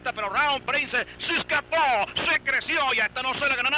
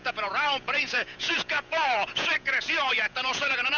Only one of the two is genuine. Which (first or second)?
first